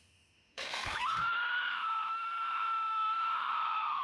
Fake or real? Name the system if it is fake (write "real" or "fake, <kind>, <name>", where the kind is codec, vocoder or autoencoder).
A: fake, autoencoder, DAC-VAE